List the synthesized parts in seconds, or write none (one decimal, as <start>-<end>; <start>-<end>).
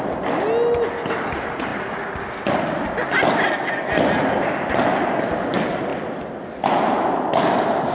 none